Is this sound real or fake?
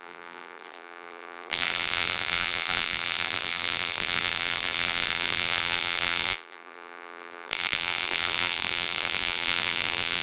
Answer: fake